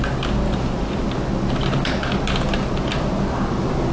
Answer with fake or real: real